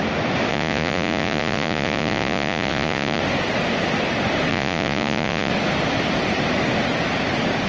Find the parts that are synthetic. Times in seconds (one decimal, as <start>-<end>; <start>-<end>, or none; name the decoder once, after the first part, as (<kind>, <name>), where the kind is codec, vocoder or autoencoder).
0.5-3.2 (vocoder, Vocos); 4.5-5.5